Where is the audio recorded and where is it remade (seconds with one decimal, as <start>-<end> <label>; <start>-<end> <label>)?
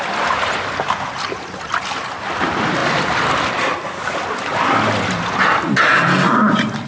0.0-6.9 recorded